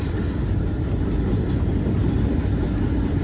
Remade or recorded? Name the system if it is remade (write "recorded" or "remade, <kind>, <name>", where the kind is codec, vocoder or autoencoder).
recorded